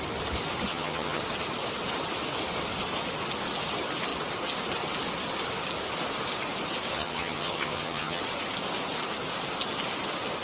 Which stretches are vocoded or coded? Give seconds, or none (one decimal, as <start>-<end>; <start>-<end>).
0.7-1.2; 6.9-8.2